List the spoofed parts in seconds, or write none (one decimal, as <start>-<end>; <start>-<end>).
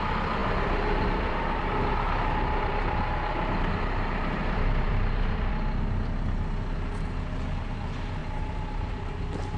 0.4-5.5; 8.2-9.2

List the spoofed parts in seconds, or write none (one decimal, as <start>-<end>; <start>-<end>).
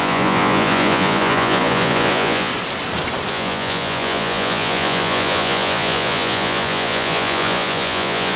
0.0-2.5; 3.3-8.4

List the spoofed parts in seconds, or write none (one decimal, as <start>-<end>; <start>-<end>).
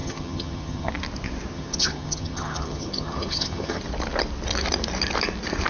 0.0-0.9; 1.5-3.8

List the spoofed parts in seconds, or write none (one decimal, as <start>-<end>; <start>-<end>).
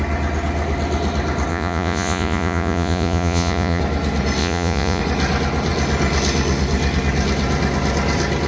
1.5-3.8; 4.4-5.0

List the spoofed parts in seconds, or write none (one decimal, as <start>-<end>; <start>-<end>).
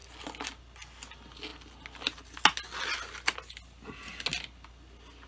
none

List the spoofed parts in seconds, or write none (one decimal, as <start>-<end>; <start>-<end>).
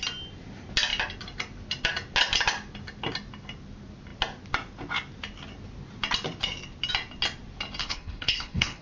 7.8-8.8